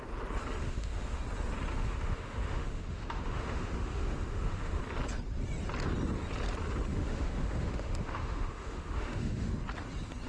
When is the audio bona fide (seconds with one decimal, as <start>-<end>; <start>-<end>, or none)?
0.0-0.6; 1.2-1.7; 4.8-6.9; 9.5-10.3

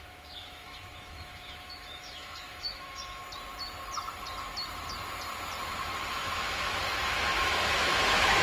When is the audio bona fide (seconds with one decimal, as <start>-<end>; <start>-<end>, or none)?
3.2-6.1

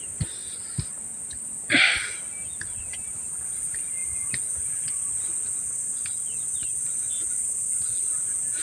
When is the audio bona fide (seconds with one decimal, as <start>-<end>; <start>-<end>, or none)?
0.0-8.6

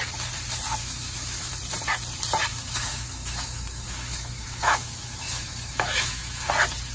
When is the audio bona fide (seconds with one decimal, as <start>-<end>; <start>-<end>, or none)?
0.0-0.8; 1.5-2.5; 6.5-6.9